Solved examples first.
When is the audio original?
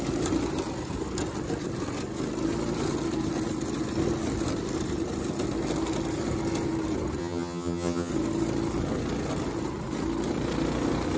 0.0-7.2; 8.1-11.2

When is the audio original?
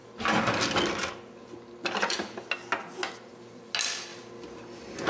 0.0-5.1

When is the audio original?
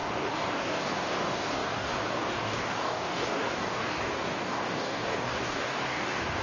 none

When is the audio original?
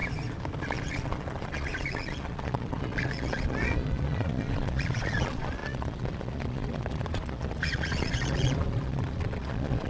0.0-0.6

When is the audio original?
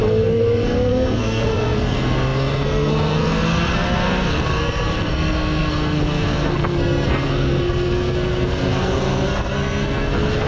none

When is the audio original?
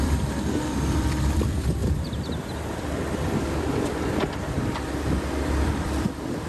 none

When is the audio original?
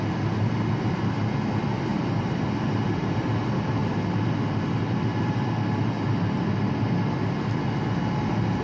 0.0-1.9; 3.2-8.6